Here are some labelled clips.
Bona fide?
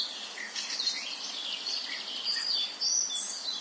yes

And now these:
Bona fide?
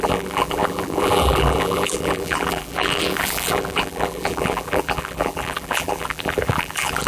no